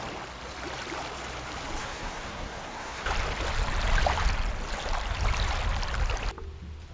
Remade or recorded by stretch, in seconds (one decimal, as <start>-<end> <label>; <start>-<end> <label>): 0.0-1.8 recorded; 1.8-3.0 remade; 3.0-6.9 recorded